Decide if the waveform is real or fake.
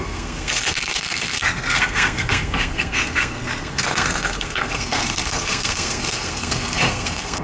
fake